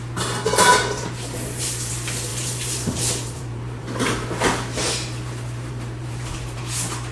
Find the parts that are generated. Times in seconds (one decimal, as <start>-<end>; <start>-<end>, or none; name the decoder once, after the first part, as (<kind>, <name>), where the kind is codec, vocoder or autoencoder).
0.7-1.9 (vocoder, BigVGAN v2); 2.3-6.6